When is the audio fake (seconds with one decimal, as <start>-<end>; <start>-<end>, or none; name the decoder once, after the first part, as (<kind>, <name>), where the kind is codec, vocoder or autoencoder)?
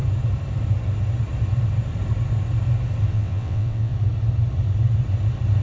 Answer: 3.1-3.9 (vocoder, WaveNeXt)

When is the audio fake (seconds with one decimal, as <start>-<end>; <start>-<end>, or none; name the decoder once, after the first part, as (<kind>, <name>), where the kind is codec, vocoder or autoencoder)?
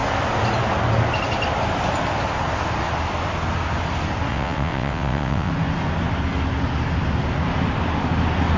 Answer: 4.3-5.5 (vocoder, WaveNeXt)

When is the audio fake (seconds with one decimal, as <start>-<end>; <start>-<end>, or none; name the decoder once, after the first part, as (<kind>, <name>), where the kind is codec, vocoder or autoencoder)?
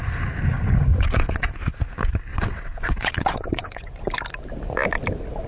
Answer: 0.9-1.5 (vocoder, WaveNeXt); 2.3-3.9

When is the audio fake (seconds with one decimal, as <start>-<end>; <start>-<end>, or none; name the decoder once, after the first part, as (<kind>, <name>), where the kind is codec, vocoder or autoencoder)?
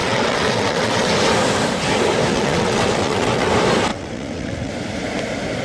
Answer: 0.0-1.1 (vocoder, WaveNeXt); 2.3-3.5; 3.9-4.7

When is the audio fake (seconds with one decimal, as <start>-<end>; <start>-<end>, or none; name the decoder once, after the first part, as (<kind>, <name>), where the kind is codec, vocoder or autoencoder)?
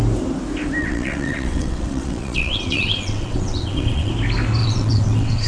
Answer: 0.8-4.1 (vocoder, WaveNeXt); 4.6-5.5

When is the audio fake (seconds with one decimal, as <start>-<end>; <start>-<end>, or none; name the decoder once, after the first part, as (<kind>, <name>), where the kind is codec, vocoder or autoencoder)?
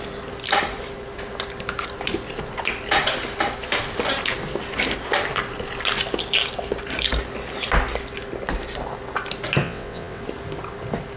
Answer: 9.6-10.2 (vocoder, WaveNeXt)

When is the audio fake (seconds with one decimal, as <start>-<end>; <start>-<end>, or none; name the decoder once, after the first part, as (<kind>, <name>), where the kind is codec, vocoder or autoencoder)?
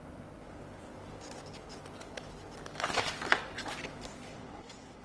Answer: 4.3-5.0 (vocoder, WaveNeXt)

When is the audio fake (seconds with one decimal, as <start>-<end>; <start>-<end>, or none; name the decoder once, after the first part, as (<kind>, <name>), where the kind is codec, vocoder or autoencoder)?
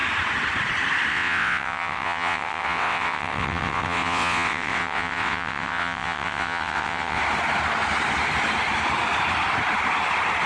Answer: 1.1-7.2 (vocoder, WaveNeXt)